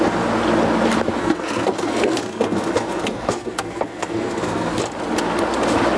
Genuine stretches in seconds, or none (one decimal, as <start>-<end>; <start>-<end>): 0.0-1.2; 4.8-6.0